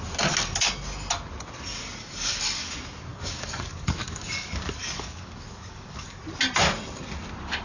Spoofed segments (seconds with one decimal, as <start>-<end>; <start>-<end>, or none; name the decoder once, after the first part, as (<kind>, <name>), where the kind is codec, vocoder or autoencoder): 2.0-2.7 (codec, DAC); 3.1-6.2